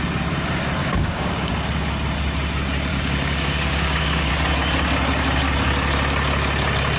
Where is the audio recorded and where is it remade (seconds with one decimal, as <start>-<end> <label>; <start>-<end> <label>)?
0.0-0.8 recorded; 0.8-1.5 remade; 1.5-2.9 recorded; 2.9-4.3 remade; 4.3-7.0 recorded